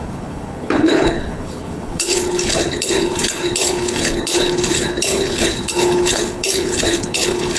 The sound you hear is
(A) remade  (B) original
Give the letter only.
A